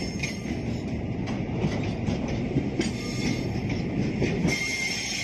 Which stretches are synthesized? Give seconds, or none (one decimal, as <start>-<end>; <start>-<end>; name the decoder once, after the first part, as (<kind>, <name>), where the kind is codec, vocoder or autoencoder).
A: none